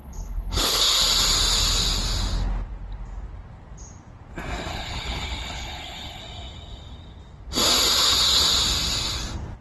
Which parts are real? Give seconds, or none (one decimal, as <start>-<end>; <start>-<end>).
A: 0.8-4.7; 6.2-9.6

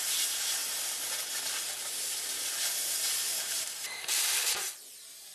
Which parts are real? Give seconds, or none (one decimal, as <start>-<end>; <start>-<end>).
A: 0.0-3.3; 4.3-5.3